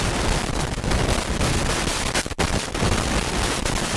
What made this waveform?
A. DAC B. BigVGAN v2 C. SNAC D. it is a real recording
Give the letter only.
B